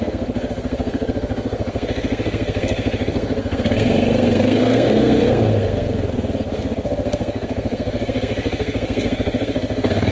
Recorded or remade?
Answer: remade